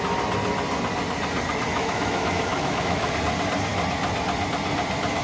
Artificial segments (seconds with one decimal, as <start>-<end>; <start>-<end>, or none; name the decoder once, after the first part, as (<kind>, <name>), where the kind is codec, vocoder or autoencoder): 1.7-3.1 (autoencoder, DAC-VAE)